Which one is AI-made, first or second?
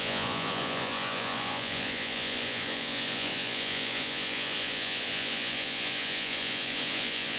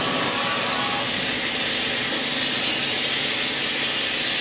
first